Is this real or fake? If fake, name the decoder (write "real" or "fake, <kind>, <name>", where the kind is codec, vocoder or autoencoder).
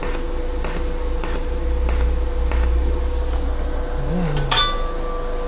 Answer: real